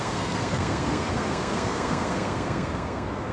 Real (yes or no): no